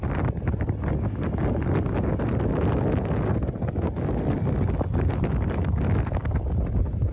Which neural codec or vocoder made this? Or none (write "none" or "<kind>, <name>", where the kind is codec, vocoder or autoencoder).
none